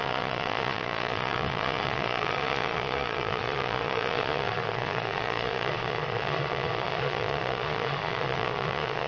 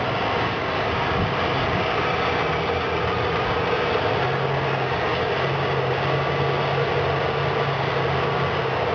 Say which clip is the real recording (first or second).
second